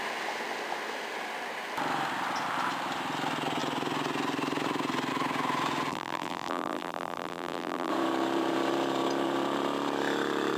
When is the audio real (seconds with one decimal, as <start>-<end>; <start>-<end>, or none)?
0.0-5.9; 7.9-10.6